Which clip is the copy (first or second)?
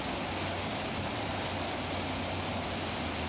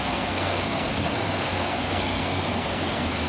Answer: second